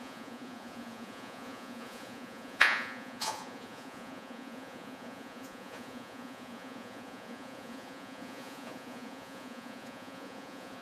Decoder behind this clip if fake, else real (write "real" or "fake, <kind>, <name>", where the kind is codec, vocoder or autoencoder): fake, vocoder, Vocos